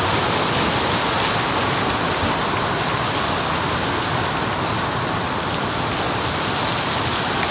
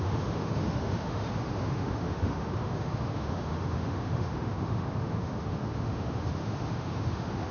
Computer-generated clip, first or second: second